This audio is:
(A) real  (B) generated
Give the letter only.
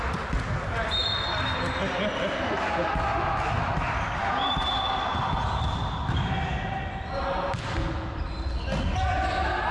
A